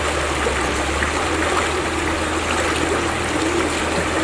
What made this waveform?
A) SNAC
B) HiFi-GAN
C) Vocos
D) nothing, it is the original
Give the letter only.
D